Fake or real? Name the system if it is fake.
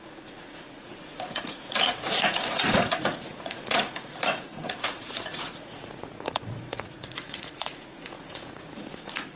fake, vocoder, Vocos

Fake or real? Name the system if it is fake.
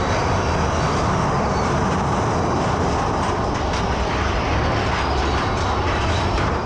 real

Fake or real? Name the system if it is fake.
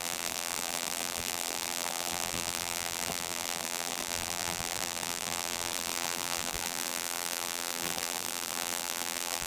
fake, vocoder, BigVGAN v2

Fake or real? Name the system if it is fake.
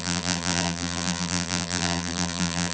fake, vocoder, BigVGAN v2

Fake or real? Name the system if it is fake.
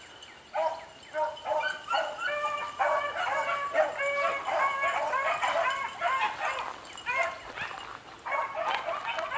real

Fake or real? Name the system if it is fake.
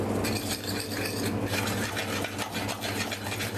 real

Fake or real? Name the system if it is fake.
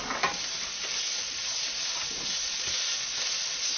real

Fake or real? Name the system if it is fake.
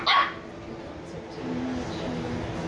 real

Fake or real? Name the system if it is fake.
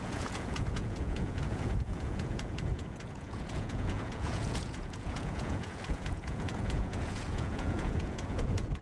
fake, vocoder, Vocos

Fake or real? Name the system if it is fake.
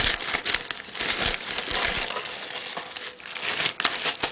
real